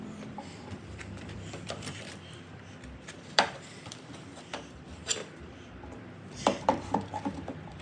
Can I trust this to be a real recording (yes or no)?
no